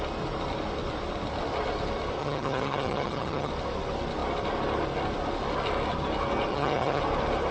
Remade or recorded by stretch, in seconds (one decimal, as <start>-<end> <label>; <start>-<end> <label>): 0.0-2.2 recorded; 2.2-3.5 remade; 3.5-6.5 recorded; 6.5-7.0 remade; 7.0-7.5 recorded